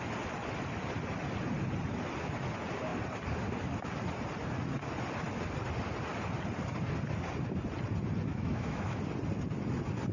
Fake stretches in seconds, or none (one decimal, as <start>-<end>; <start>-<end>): 8.3-9.0